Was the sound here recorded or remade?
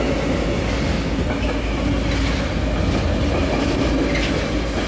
recorded